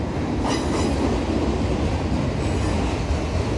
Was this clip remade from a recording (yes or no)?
no